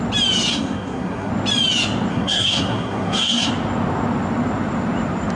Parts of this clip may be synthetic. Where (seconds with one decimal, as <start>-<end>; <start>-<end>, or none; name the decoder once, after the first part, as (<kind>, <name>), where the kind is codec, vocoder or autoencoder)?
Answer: 0.5-1.3 (codec, SNAC); 2.1-3.5